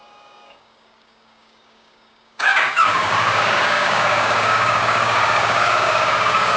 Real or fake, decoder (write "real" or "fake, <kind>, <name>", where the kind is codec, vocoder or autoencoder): fake, codec, DAC